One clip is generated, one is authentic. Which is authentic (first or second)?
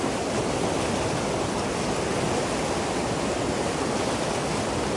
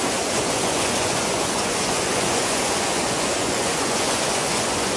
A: first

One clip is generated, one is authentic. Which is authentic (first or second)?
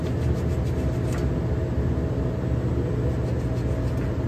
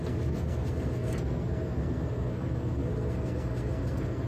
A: first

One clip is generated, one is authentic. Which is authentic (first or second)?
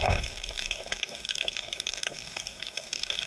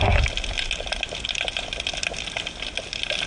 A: second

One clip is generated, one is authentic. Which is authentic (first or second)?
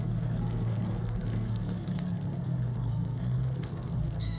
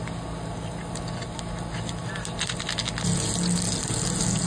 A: second